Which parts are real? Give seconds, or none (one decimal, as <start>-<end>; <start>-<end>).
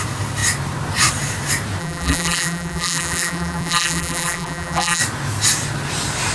0.0-1.8; 5.0-6.3